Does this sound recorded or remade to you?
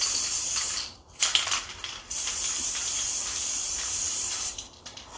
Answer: remade